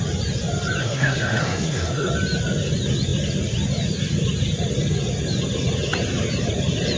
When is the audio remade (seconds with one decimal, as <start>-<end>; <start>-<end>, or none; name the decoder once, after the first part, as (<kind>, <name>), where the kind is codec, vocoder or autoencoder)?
0.8-2.1 (codec, SNAC)